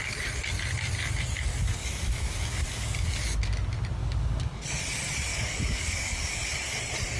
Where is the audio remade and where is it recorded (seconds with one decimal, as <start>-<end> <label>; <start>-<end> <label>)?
0.0-1.5 recorded; 1.5-3.2 remade; 3.2-4.0 recorded; 4.0-4.6 remade; 4.6-5.3 recorded; 5.3-6.5 remade; 6.5-7.2 recorded